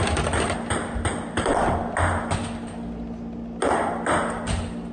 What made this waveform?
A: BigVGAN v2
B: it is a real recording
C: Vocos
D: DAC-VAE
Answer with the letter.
B